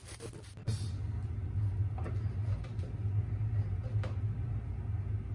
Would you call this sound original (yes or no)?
yes